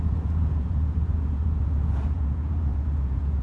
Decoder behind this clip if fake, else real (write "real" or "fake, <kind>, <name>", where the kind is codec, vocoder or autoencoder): fake, vocoder, Vocos